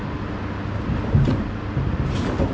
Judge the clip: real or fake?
real